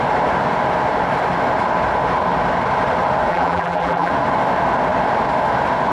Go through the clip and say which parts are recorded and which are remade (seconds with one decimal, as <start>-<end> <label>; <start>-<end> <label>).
0.0-3.3 recorded; 3.3-4.1 remade; 4.1-5.9 recorded